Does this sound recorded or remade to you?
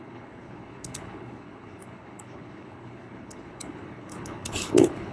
remade